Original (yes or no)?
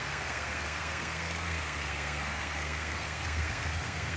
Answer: no